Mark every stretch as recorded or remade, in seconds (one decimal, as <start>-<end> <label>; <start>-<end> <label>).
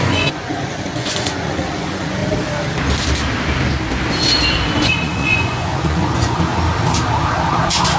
0.0-2.2 remade; 2.2-4.8 recorded; 4.8-6.5 remade; 6.5-8.0 recorded